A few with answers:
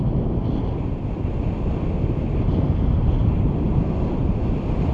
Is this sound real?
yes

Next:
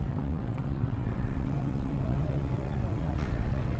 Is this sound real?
no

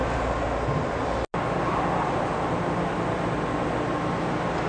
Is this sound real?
yes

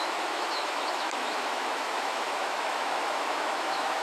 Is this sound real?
no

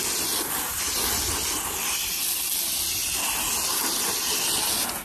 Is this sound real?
yes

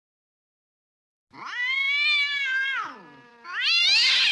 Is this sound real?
yes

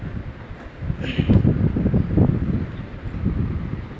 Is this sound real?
yes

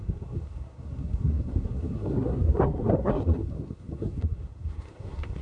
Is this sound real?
no